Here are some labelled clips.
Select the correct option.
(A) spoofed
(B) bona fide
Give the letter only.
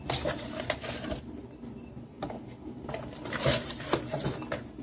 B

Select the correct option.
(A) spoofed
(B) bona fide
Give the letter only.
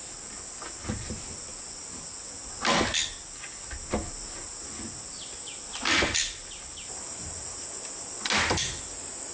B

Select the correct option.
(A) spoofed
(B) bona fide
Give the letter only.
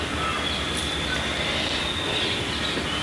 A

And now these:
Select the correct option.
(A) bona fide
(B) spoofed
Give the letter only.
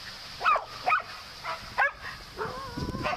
A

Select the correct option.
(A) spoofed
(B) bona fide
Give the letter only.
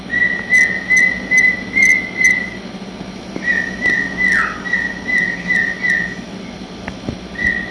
B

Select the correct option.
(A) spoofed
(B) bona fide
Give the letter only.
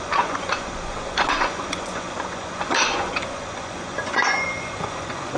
A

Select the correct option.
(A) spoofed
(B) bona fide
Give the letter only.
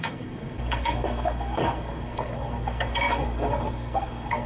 A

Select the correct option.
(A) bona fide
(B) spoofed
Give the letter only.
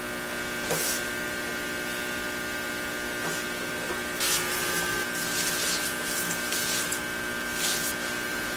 A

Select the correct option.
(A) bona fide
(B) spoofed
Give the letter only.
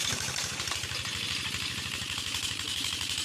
B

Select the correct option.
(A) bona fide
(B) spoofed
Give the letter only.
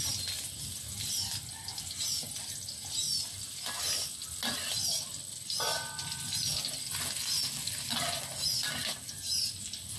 A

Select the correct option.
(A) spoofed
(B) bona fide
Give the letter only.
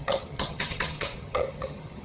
A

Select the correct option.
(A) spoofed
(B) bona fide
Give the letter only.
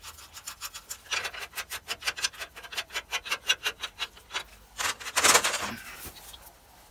B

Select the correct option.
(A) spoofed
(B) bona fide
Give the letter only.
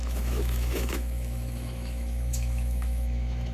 A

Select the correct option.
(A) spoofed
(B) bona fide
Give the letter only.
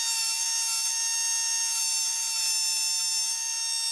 B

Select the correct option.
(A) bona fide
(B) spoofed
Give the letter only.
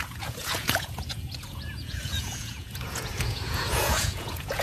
B